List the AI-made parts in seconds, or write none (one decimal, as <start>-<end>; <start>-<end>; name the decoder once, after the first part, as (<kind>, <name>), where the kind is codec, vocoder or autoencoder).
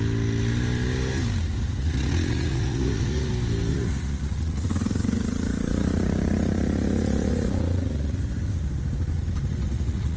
1.8-3.3 (vocoder, Vocos); 3.7-8.2; 9.5-10.2